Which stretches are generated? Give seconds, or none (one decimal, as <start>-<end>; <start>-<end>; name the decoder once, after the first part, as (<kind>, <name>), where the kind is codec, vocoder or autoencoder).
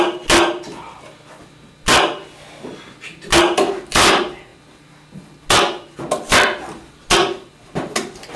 none